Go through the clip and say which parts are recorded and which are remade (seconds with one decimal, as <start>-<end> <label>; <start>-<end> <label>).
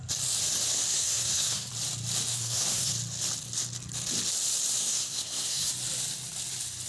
0.0-0.9 recorded; 0.9-1.7 remade; 1.7-2.3 recorded; 2.3-2.9 remade; 2.9-4.8 recorded; 4.8-5.7 remade; 5.7-6.9 recorded